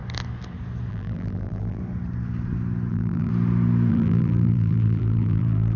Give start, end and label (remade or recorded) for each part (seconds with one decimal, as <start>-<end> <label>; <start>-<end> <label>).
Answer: 0.0-0.9 recorded; 0.9-1.8 remade; 1.8-2.9 recorded; 2.9-3.3 remade; 3.3-3.9 recorded; 3.9-5.8 remade